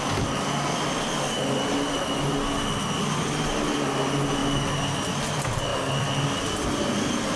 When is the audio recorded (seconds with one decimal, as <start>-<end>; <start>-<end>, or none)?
0.0-5.7; 6.5-7.4